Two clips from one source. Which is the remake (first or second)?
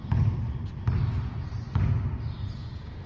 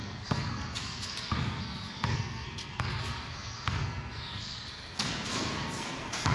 second